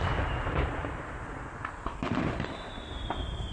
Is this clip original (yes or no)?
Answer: yes